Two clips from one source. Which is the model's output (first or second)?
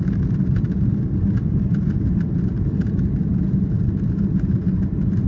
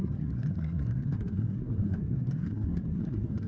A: second